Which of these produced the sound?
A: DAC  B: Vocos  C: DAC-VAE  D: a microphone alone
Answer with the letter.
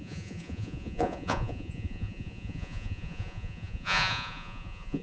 B